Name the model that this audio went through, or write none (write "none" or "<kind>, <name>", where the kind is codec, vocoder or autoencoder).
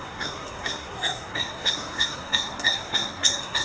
codec, SNAC